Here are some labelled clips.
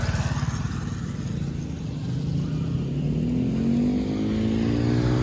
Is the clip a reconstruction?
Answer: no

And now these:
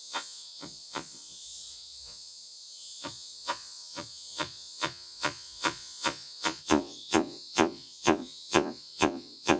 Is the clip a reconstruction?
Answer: yes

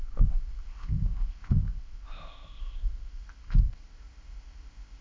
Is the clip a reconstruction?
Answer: yes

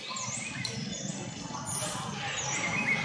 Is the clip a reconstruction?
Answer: no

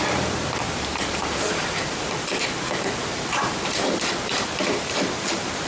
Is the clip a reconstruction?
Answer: yes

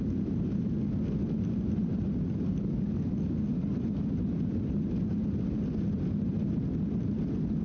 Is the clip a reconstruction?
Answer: no